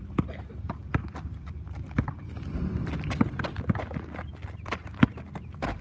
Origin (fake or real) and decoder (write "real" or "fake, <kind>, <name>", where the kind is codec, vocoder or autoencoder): real